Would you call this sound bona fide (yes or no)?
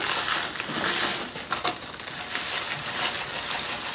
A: yes